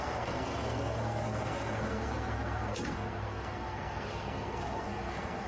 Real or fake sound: fake